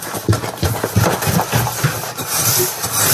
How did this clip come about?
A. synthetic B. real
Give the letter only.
B